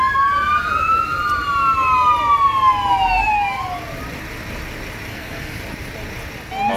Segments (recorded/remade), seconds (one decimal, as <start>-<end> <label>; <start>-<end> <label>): 0.0-5.1 recorded; 5.1-5.6 remade; 5.6-6.8 recorded